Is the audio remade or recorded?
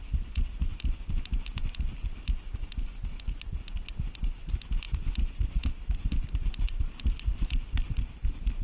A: recorded